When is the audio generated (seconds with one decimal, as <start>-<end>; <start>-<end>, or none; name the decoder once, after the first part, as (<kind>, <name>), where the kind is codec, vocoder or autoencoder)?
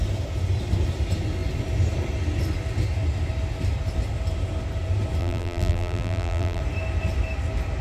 5.2-6.6 (vocoder, BigVGAN v2)